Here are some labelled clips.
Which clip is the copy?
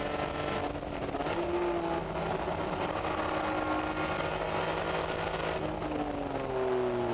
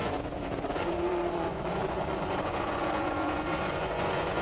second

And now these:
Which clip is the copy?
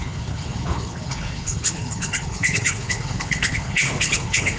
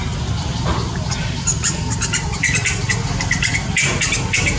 first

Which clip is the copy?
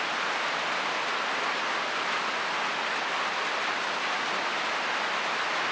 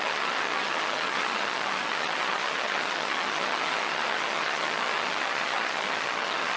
second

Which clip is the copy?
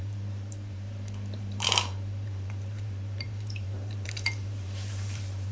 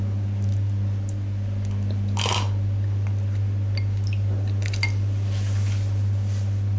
first